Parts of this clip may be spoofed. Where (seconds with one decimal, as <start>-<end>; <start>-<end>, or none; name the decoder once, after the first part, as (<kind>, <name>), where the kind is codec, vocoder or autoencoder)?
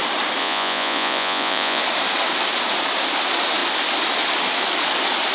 0.4-1.8 (vocoder, Vocos)